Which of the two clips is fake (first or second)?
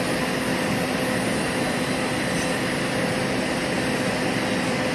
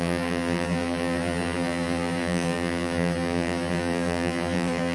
second